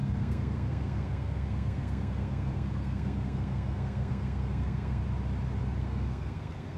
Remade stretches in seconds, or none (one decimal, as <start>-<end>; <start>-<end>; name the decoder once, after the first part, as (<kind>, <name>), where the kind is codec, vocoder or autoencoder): 0.0-5.0 (codec, SNAC); 5.8-6.8